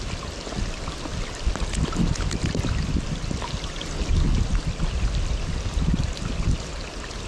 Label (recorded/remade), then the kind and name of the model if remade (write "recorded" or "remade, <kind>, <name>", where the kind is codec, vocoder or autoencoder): recorded